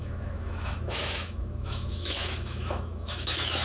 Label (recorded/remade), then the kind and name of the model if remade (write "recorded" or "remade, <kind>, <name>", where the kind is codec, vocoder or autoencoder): remade, autoencoder, DAC-VAE